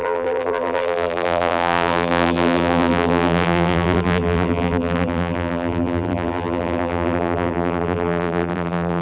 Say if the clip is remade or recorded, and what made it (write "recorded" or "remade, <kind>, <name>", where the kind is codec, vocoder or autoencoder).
remade, vocoder, BigVGAN v2